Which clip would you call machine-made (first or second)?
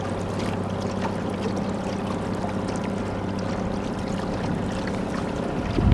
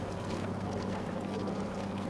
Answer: second